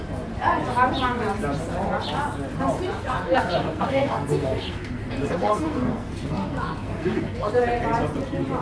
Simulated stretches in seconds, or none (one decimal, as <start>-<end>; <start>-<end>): 3.0-7.5